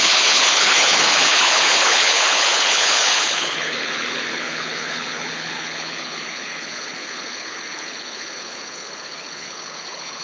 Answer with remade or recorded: remade